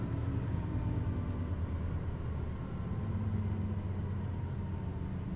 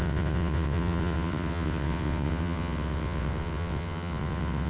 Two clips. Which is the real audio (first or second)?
first